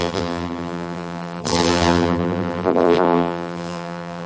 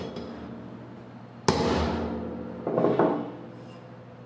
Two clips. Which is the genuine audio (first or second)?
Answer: second